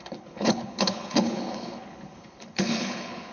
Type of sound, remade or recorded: remade